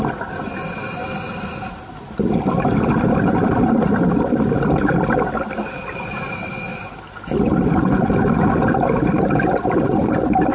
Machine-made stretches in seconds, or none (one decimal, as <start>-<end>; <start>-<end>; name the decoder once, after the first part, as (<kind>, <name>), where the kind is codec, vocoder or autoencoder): none

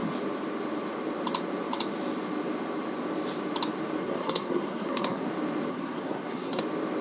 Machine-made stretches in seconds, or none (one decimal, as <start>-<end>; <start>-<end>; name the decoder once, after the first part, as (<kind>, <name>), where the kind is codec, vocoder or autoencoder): 4.0-5.3 (codec, SNAC); 5.7-6.6